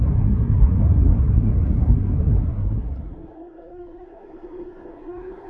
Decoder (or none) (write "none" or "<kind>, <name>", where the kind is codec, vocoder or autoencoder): codec, SNAC